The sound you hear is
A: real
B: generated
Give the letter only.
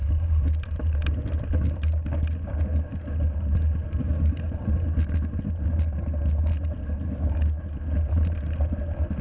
A